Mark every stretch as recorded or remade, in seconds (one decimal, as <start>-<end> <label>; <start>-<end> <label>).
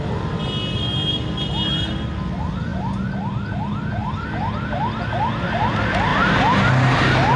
0.0-4.0 recorded; 4.0-4.7 remade; 4.7-6.1 recorded; 6.1-6.7 remade; 6.7-7.4 recorded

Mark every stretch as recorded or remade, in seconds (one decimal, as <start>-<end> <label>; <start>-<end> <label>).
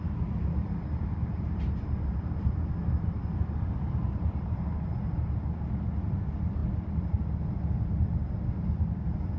0.0-6.6 recorded; 6.6-7.2 remade; 7.2-9.4 recorded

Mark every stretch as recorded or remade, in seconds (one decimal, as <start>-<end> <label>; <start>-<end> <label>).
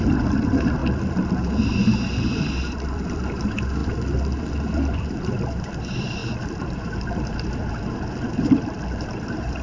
0.0-0.8 remade; 0.8-2.9 recorded; 2.9-3.8 remade; 3.8-4.7 recorded; 4.7-9.6 remade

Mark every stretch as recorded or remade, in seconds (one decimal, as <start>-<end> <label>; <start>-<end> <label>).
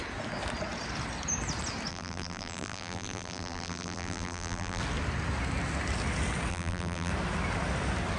0.0-1.9 recorded; 1.9-4.8 remade; 4.8-6.5 recorded; 6.5-7.1 remade; 7.1-8.2 recorded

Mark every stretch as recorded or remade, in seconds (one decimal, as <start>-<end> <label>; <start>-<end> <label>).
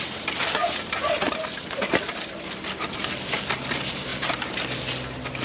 0.0-0.6 recorded; 0.6-3.4 remade; 3.4-5.4 recorded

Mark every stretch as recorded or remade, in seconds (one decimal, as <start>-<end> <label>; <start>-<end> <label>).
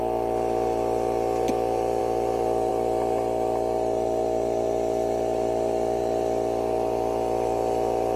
0.0-2.0 recorded; 2.0-2.7 remade; 2.7-6.0 recorded; 6.0-8.2 remade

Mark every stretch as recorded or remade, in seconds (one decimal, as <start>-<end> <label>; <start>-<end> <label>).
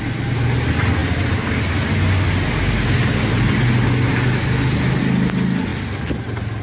0.0-6.6 recorded